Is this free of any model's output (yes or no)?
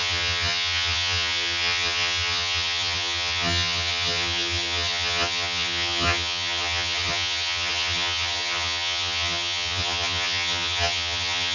no